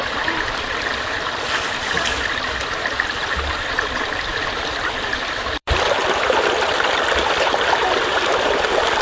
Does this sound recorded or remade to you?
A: remade